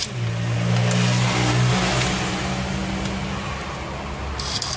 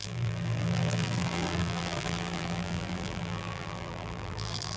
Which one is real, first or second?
first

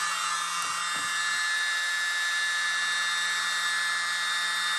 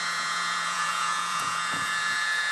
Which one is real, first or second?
first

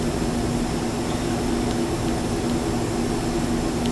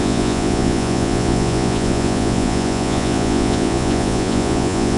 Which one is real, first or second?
first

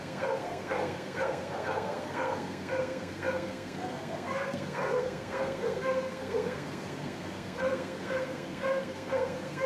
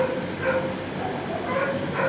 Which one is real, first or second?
second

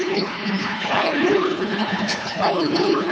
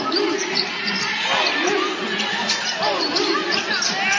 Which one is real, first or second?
second